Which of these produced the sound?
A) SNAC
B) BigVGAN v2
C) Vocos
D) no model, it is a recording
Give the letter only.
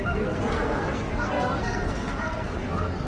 A